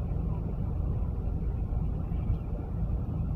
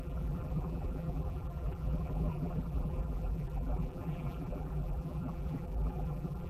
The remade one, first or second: second